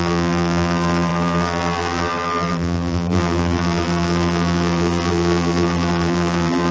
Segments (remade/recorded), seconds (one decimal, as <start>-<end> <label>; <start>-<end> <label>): 0.0-6.7 remade